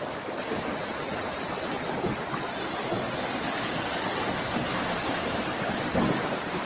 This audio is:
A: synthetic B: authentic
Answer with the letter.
B